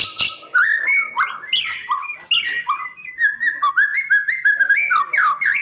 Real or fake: real